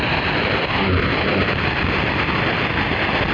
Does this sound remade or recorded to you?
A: recorded